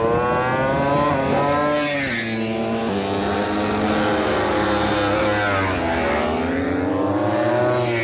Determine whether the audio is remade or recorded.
recorded